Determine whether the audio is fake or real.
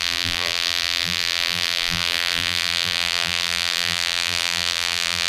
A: fake